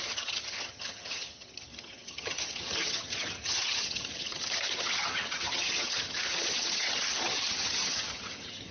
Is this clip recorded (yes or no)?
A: no